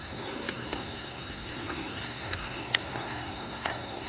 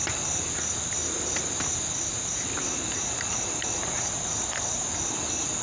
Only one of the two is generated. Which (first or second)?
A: first